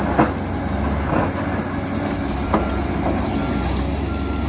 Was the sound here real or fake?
real